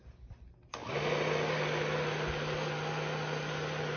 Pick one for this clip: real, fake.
real